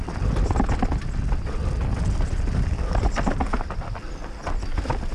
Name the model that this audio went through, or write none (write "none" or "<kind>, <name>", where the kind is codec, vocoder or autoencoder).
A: none